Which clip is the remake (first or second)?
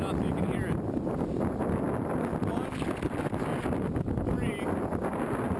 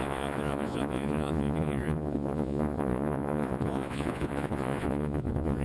second